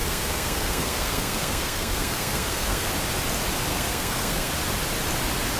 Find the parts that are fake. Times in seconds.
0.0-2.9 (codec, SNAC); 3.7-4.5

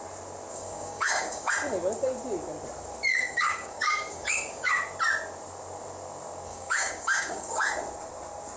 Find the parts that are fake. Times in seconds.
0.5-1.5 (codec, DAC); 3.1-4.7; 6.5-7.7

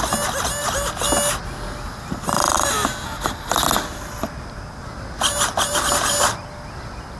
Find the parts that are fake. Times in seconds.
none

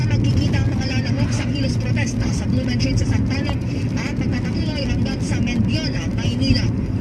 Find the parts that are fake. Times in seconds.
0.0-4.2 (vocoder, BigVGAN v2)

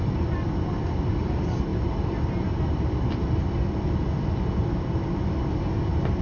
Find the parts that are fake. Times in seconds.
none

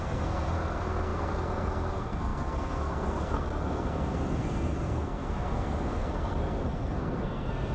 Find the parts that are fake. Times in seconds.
0.0-7.7 (codec, SNAC)